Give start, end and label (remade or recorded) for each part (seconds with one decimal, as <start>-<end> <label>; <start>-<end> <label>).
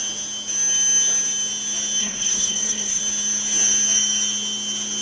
0.0-2.0 recorded; 2.0-3.0 remade; 3.0-5.0 recorded